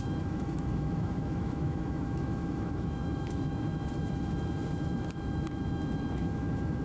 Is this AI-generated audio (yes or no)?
yes